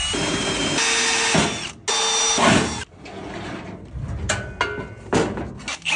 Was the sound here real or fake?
real